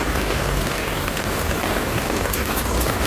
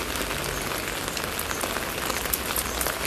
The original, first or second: second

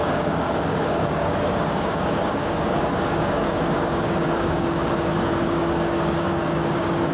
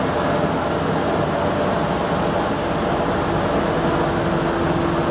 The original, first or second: second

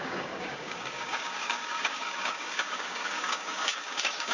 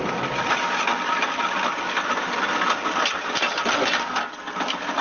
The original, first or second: second